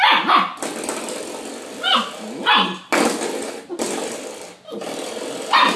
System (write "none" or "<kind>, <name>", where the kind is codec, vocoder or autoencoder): none